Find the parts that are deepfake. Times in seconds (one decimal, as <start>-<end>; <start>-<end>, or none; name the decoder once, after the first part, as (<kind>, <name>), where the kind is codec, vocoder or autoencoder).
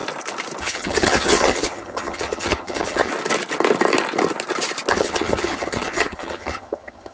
0.6-3.1 (vocoder, HiFi-GAN); 4.9-7.1